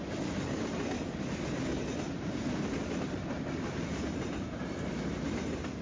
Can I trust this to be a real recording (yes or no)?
yes